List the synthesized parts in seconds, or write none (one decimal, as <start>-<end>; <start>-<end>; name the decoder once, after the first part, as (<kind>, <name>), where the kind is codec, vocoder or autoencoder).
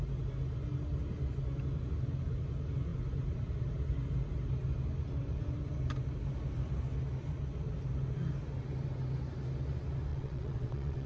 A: 10.1-11.1 (vocoder, WaveNeXt)